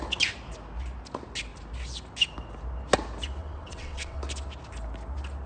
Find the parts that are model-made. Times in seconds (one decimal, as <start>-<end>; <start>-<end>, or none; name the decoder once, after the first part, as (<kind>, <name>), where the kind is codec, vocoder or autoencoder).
3.4-4.2 (vocoder, WaveNeXt)